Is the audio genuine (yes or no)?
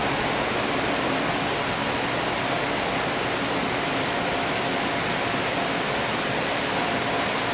yes